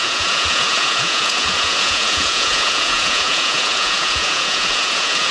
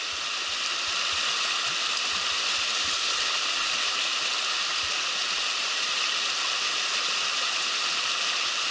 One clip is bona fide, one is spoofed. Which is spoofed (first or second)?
first